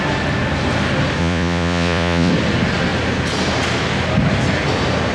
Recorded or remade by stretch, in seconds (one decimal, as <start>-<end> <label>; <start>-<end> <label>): 0.0-1.2 recorded; 1.2-2.3 remade; 2.3-5.1 recorded